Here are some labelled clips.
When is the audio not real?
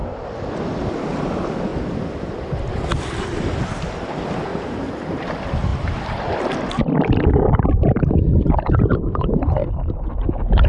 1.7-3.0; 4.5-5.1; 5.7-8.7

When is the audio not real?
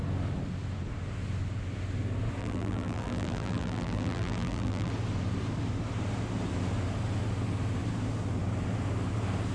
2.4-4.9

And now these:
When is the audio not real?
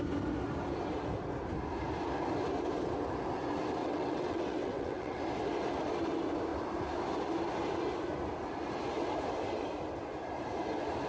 3.8-5.2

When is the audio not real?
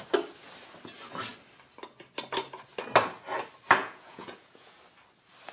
3.8-4.8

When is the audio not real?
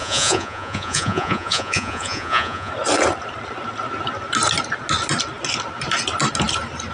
0.0-2.7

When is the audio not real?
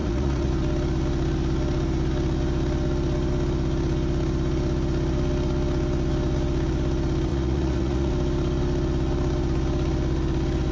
0.0-0.5; 7.3-8.1